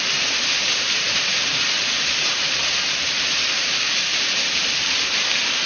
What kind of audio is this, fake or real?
fake